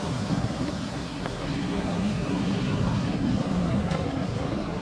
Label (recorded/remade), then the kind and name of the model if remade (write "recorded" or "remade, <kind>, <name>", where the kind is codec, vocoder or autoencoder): remade, codec, SNAC